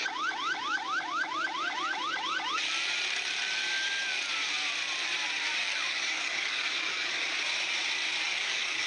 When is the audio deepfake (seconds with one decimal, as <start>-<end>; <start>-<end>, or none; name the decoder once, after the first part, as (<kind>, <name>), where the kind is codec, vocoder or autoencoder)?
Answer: 5.6-7.1 (codec, DAC); 8.2-8.9